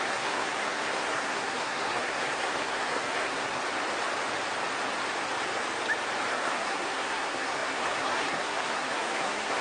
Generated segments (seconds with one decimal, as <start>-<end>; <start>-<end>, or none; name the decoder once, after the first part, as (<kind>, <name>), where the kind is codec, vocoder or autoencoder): 0.0-3.6 (codec, SNAC); 6.3-9.6